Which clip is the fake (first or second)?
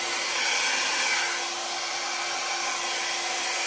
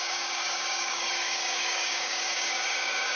second